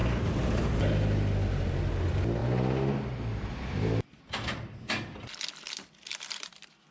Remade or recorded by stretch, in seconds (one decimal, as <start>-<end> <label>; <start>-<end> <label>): 0.0-6.9 recorded